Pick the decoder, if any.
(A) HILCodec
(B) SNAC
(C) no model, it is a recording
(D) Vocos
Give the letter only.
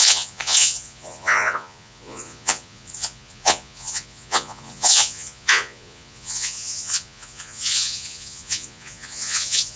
D